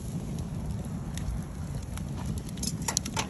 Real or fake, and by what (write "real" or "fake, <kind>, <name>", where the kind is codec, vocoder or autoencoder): real